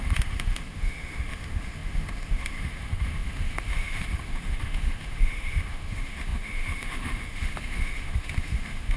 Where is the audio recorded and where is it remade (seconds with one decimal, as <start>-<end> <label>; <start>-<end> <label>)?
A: 0.0-9.0 remade